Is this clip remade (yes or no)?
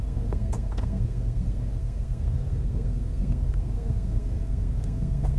yes